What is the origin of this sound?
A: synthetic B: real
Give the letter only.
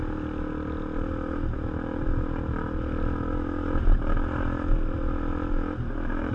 B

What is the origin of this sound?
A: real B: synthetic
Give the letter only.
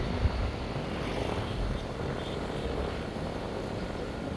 A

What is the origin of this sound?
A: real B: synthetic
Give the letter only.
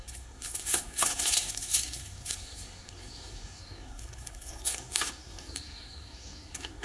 B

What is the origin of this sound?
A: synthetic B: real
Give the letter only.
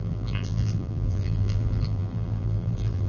A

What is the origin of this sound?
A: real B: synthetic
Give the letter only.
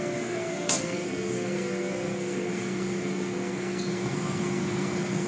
B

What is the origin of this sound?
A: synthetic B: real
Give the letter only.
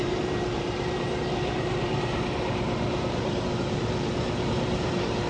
A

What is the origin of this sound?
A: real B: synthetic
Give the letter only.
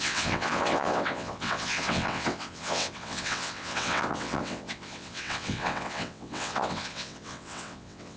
B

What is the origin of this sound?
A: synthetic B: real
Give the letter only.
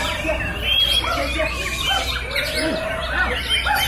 B